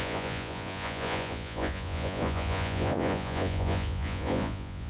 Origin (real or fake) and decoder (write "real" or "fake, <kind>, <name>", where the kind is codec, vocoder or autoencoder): fake, vocoder, Vocos